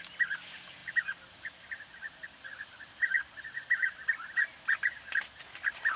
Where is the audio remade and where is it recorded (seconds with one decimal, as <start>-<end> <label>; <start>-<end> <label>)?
0.0-6.0 recorded

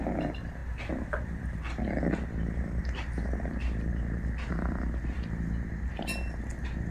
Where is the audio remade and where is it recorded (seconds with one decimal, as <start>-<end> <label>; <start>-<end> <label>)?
0.0-6.9 recorded